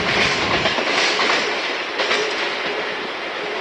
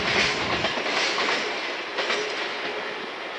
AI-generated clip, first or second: first